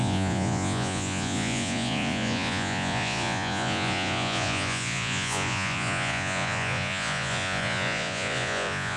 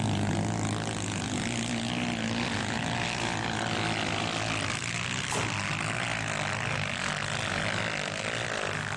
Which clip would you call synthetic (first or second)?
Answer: first